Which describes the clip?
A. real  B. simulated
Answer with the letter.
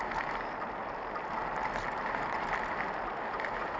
A